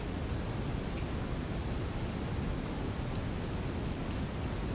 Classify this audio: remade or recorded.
recorded